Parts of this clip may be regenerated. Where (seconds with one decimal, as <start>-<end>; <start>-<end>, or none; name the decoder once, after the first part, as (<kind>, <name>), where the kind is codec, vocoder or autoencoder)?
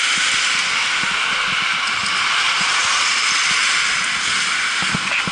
none